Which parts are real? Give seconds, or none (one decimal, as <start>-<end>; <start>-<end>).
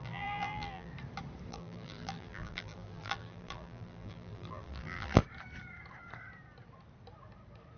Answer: 0.9-1.5; 5.2-7.8